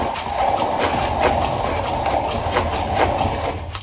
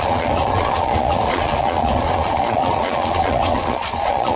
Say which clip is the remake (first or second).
second